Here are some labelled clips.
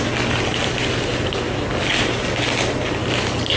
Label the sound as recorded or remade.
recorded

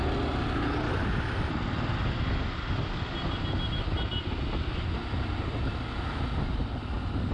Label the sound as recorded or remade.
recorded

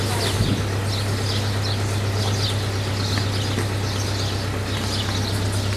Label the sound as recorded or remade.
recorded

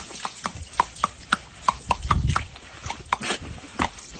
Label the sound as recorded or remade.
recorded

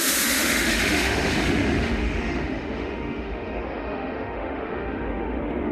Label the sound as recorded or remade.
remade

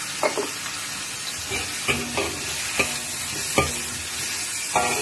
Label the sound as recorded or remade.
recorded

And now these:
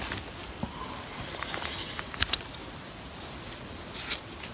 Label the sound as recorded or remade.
recorded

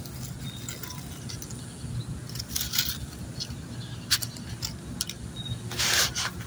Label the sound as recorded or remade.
recorded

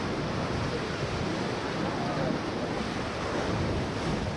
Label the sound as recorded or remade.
recorded